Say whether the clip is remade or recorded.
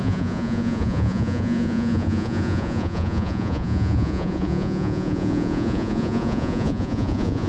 remade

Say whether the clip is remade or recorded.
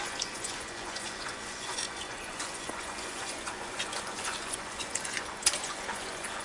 remade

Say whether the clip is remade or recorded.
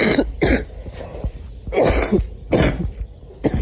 recorded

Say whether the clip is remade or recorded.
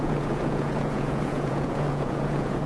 remade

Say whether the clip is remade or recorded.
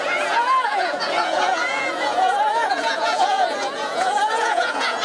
remade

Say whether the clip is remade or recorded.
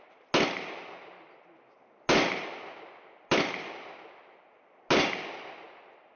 recorded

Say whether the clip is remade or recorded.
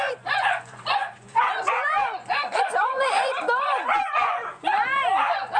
remade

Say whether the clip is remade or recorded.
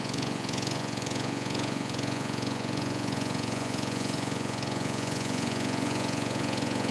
remade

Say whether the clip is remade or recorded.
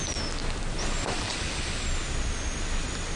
recorded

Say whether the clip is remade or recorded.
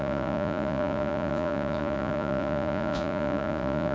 remade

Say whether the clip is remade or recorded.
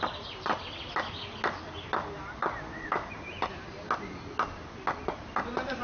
recorded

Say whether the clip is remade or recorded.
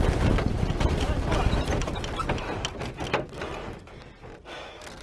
recorded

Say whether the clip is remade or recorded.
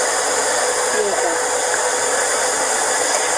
recorded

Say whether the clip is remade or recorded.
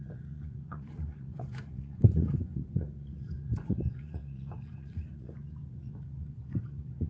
remade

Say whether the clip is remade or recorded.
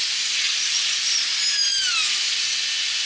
recorded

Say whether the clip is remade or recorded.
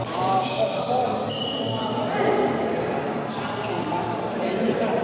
recorded